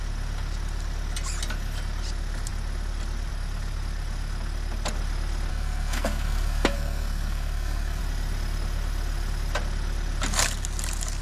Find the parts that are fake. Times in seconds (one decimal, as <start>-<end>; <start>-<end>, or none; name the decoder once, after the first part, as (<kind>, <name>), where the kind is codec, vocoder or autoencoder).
5.5-8.0 (codec, SNAC)